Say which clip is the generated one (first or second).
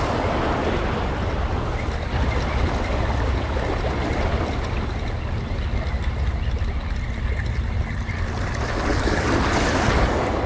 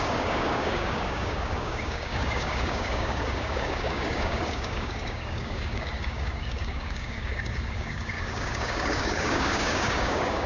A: second